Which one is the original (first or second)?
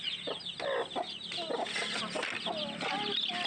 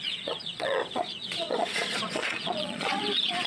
first